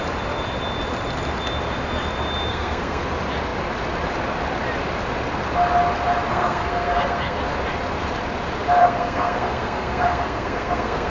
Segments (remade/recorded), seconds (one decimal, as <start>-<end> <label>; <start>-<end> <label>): 0.0-2.5 recorded; 2.5-3.0 remade; 3.0-6.3 recorded; 6.3-7.4 remade; 7.4-8.8 recorded; 8.8-11.1 remade